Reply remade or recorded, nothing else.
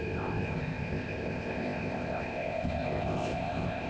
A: remade